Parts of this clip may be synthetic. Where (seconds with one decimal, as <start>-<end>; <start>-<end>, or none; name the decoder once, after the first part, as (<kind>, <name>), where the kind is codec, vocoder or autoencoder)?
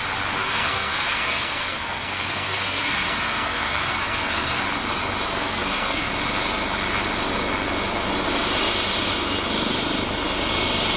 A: 0.4-4.6 (codec, SNAC); 5.4-6.1